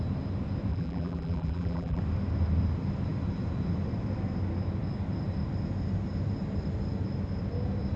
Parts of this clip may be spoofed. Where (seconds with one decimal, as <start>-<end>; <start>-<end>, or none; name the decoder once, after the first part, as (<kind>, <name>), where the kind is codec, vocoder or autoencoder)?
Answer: 0.7-2.0 (vocoder, BigVGAN v2)